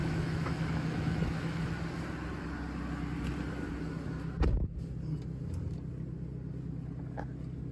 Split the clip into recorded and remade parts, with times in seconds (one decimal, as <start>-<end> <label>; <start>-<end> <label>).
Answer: 0.0-1.7 remade; 1.7-7.7 recorded